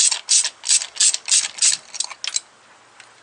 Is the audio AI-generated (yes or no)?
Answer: no